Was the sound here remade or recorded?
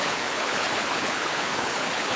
remade